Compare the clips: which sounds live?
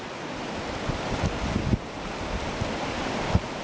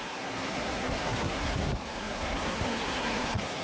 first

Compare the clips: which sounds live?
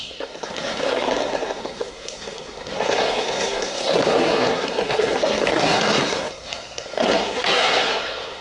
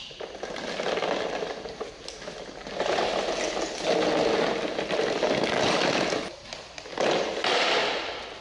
second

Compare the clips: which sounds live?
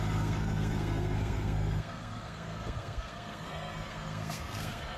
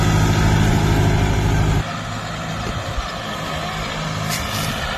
second